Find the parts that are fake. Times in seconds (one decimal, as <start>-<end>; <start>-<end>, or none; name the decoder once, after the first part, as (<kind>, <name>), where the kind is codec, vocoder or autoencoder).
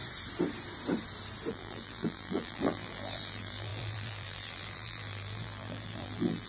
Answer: 1.5-6.5 (vocoder, BigVGAN v2)